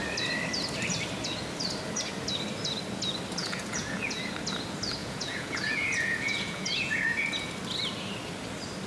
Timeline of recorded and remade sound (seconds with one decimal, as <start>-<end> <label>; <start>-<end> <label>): 0.0-3.4 recorded; 3.4-4.2 remade; 4.2-5.0 recorded; 5.0-7.5 remade; 7.5-8.9 recorded